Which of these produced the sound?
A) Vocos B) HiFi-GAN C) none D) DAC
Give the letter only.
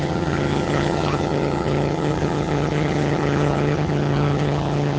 B